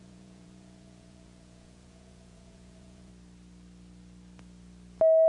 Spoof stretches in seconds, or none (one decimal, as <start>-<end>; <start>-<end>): 0.0-3.1